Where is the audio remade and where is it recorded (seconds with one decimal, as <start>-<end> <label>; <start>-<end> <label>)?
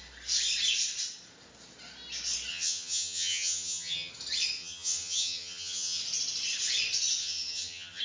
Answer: 0.0-2.5 recorded; 2.5-4.1 remade; 4.1-4.6 recorded; 4.6-6.0 remade; 6.0-7.2 recorded; 7.2-8.0 remade